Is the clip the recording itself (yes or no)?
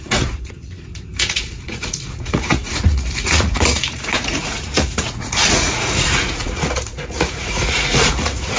no